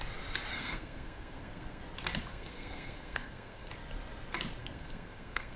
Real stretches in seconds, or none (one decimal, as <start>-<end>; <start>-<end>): 0.0-0.5; 1.8-2.3; 3.7-4.6